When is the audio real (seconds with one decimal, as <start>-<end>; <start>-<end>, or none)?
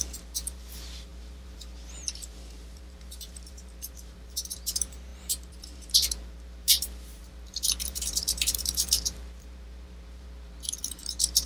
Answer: none